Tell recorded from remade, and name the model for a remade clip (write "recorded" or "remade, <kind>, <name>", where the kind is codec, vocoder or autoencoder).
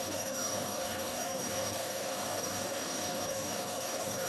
remade, codec, DAC